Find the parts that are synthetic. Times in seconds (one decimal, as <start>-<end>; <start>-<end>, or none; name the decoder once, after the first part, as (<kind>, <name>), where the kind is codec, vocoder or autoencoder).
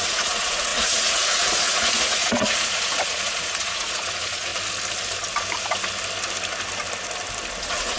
0.0-4.5 (vocoder, Vocos); 7.6-8.0